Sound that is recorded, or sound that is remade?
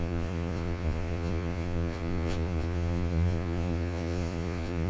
remade